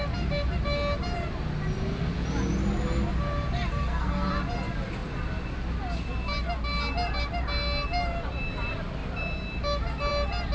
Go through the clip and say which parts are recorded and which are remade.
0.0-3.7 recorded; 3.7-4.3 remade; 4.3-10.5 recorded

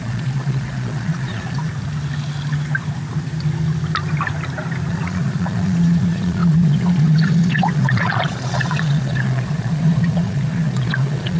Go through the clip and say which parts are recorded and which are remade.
0.0-1.7 remade; 1.7-4.9 recorded; 4.9-11.4 remade

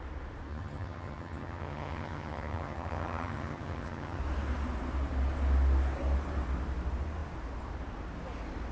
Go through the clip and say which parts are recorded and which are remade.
0.0-0.5 recorded; 0.5-4.2 remade; 4.2-8.7 recorded

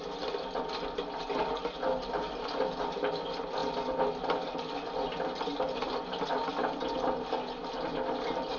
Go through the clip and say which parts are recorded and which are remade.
0.0-8.6 recorded

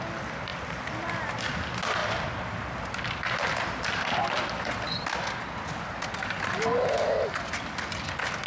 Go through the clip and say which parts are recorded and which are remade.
0.0-8.5 recorded

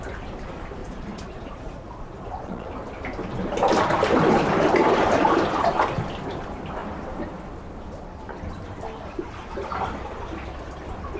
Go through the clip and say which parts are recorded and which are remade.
0.0-0.8 recorded; 0.8-2.7 remade; 2.7-11.2 recorded